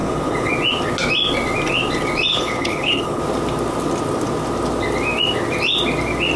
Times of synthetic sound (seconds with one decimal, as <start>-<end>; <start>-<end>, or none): 0.0-0.5; 2.3-3.2